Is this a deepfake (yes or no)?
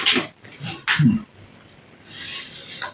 yes